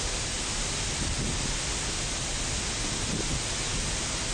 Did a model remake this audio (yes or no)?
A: no